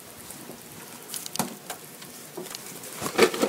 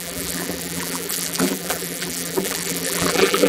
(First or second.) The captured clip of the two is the first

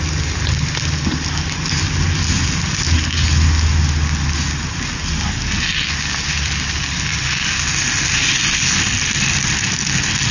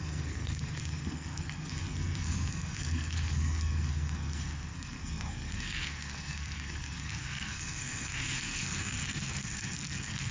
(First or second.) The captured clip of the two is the first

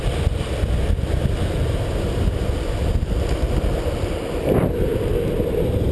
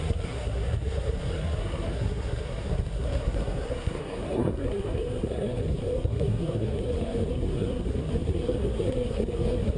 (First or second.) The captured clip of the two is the first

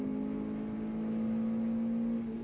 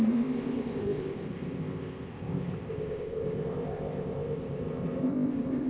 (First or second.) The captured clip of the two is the first